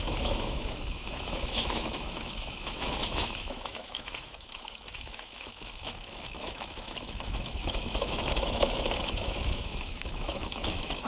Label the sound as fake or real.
fake